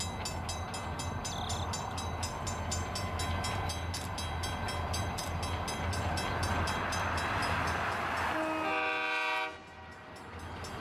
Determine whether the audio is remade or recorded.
recorded